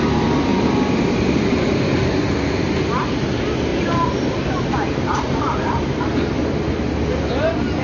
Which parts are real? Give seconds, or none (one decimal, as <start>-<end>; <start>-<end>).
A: 0.0-0.5; 2.1-3.7; 5.4-7.8